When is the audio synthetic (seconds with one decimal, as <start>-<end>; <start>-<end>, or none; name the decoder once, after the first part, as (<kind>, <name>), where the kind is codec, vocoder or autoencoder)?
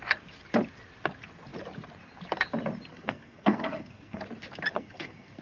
2.9-4.2 (codec, SNAC); 4.7-5.4